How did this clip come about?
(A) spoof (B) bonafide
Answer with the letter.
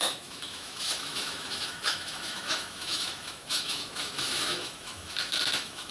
A